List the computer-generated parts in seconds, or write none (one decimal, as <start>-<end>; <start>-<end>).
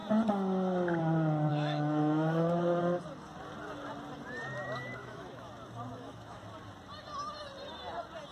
1.5-2.8; 5.0-5.5; 5.9-6.4